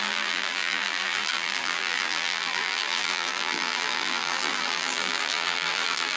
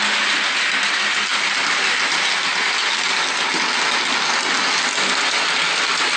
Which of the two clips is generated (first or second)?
first